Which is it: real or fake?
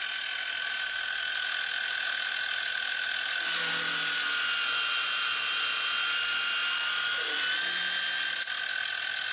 real